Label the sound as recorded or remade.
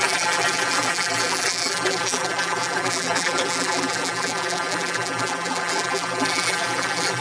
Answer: remade